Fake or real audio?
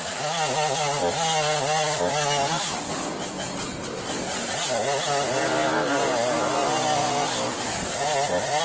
real